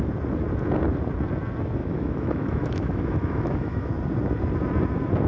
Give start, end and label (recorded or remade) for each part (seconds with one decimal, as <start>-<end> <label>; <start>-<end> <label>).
0.0-1.8 recorded; 1.8-3.9 remade; 3.9-5.3 recorded